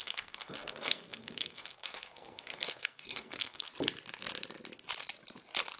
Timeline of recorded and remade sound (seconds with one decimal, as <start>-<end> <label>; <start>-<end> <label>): 0.0-3.7 remade; 3.7-5.8 recorded